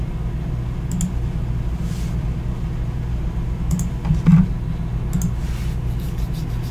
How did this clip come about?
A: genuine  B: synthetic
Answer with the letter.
A